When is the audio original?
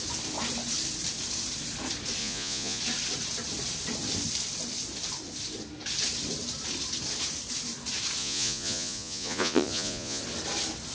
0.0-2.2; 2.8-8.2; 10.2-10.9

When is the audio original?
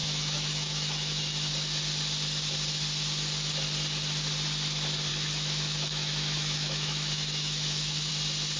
1.5-5.1; 8.1-8.6